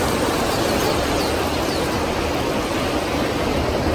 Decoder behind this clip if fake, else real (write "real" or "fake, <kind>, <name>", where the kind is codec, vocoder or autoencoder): real